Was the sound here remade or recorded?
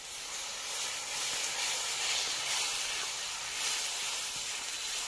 recorded